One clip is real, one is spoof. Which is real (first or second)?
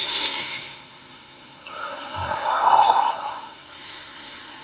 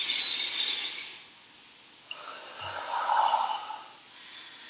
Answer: second